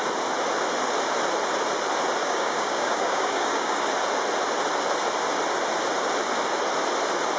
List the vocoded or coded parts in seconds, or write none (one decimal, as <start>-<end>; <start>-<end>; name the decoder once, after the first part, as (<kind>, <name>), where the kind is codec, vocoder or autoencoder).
2.2-3.9 (codec, DAC)